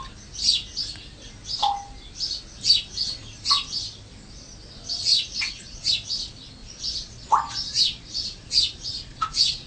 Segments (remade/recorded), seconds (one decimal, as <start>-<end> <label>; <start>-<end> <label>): 0.0-5.1 recorded; 5.1-5.9 remade; 5.9-6.6 recorded; 6.6-9.7 remade